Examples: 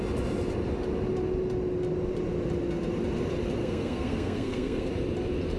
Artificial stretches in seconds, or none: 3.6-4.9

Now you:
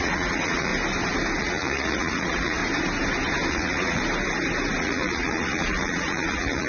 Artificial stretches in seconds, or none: 0.0-0.7; 1.4-2.6; 3.5-4.0; 4.8-6.7

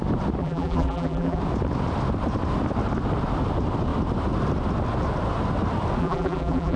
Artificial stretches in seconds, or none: 0.4-1.4; 6.0-6.8

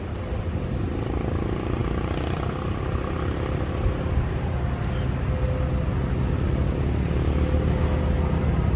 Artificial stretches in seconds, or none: none

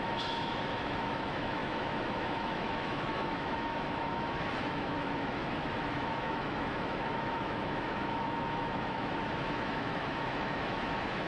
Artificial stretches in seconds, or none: 0.0-11.3

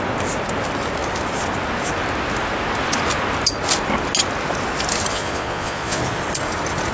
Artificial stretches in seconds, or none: 5.1-6.0

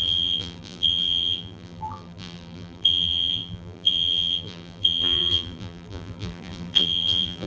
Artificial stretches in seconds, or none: 0.0-7.5

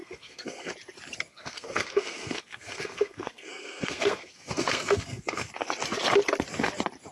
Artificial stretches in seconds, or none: 0.0-0.7; 1.3-5.5